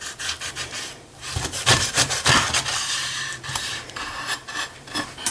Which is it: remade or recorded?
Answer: remade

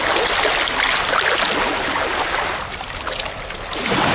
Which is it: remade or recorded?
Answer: recorded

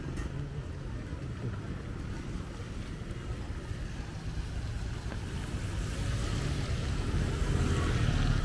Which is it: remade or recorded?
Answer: recorded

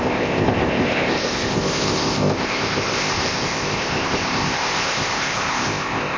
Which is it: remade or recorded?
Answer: remade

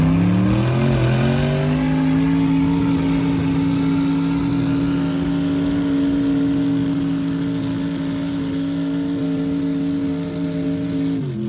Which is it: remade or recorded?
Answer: recorded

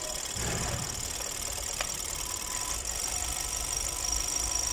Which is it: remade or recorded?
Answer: recorded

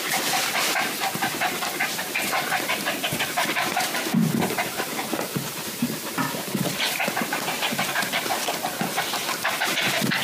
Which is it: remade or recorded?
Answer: recorded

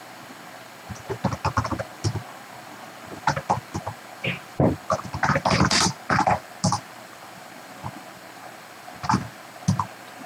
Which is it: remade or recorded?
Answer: recorded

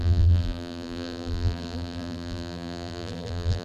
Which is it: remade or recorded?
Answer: remade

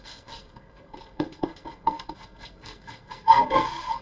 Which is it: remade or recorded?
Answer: remade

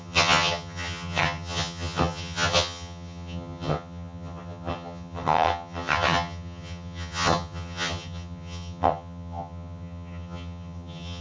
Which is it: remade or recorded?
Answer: remade